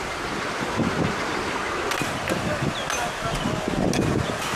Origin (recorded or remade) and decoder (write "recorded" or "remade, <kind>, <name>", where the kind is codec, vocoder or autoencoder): recorded